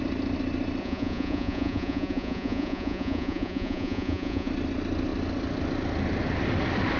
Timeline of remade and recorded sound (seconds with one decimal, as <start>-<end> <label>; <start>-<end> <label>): 0.0-0.8 recorded; 0.8-4.5 remade; 4.5-7.0 recorded